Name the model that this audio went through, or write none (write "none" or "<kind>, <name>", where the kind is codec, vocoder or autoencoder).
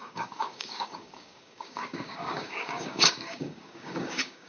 codec, DAC